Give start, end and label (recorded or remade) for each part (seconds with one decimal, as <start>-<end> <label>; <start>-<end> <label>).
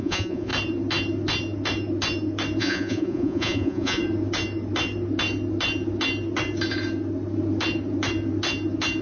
0.0-0.5 remade; 0.5-2.6 recorded; 2.6-4.0 remade; 4.0-9.0 recorded